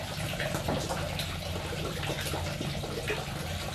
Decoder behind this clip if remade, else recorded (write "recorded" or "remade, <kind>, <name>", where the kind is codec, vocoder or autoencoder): recorded